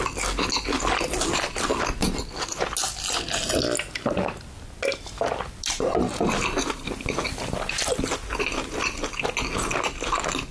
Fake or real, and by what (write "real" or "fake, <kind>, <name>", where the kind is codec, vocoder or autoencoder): real